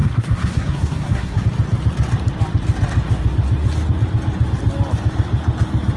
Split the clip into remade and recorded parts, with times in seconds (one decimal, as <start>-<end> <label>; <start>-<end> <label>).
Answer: 0.0-1.4 remade; 1.4-6.0 recorded